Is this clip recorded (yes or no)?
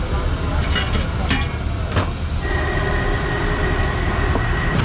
yes